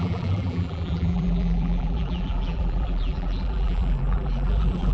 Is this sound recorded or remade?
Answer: remade